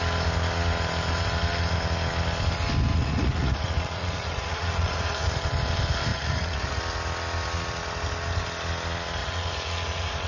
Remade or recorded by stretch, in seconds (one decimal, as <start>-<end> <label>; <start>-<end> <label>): 0.0-2.9 recorded; 2.9-5.4 remade; 5.4-6.1 recorded; 6.1-6.8 remade; 6.8-9.2 recorded; 9.2-10.3 remade